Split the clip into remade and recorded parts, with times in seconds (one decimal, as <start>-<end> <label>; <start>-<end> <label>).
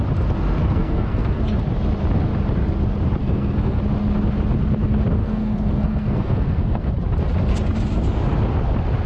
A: 0.0-0.6 recorded; 0.6-1.4 remade; 1.4-3.2 recorded; 3.2-3.8 remade; 3.8-5.2 recorded; 5.2-6.9 remade; 6.9-9.1 recorded